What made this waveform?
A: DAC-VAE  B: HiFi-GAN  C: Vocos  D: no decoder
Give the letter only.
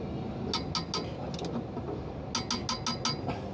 D